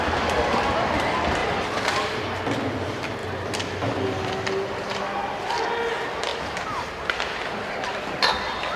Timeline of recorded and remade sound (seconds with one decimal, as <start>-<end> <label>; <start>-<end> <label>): 0.0-1.4 recorded; 1.4-2.2 remade; 2.2-6.3 recorded; 6.3-7.6 remade; 7.6-8.8 recorded